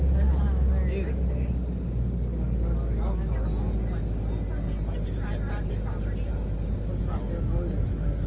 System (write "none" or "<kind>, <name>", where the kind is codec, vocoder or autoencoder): none